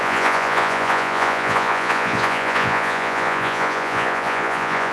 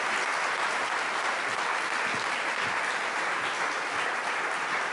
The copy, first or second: first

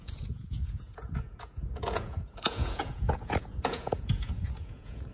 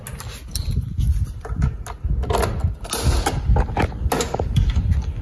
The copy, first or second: first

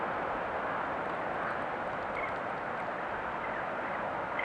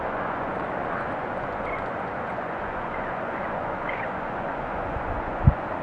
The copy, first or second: second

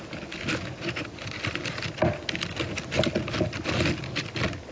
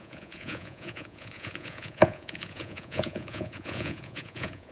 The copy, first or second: second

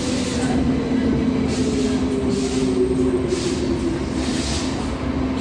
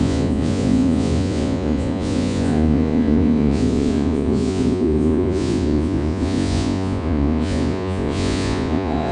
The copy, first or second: second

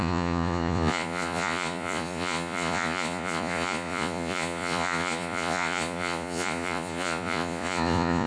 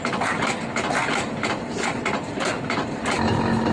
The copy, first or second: first